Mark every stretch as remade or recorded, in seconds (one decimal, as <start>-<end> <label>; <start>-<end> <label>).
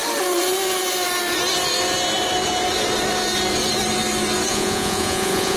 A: 0.0-4.5 recorded; 4.5-5.6 remade